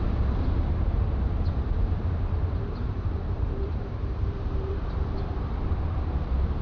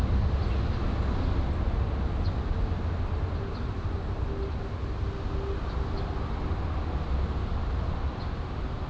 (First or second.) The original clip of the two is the second